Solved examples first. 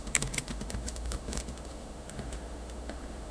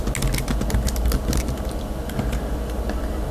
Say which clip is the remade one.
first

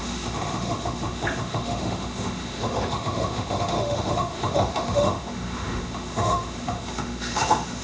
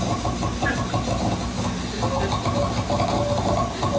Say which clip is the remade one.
first